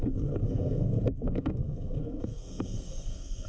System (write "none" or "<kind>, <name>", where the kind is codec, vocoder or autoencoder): codec, SNAC